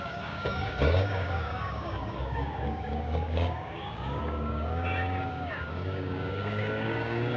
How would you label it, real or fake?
fake